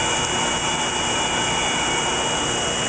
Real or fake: real